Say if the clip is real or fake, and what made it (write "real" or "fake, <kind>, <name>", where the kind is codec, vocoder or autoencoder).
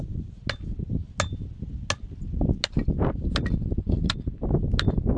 real